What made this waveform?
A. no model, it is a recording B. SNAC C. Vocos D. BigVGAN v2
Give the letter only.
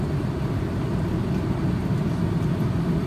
A